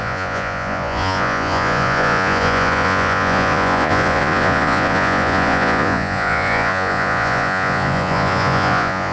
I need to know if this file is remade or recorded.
remade